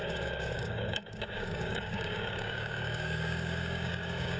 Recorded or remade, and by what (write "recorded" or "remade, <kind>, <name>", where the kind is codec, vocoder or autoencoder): remade, codec, DAC